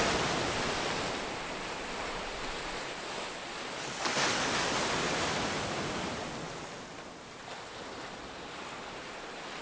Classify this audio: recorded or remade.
recorded